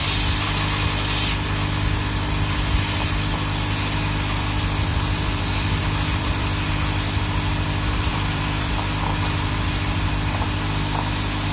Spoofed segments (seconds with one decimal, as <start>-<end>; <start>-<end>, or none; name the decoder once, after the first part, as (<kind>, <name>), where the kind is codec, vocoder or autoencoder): 4.9-6.7 (vocoder, BigVGAN v2); 8.1-8.7